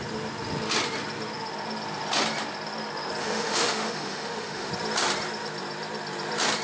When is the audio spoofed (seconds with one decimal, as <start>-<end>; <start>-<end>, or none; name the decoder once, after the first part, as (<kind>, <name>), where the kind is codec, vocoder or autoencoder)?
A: 3.2-4.7 (autoencoder, DAC-VAE)